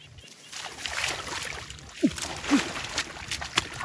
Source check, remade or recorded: recorded